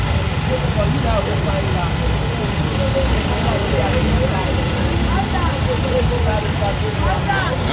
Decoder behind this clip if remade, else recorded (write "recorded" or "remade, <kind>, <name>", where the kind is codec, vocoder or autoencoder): recorded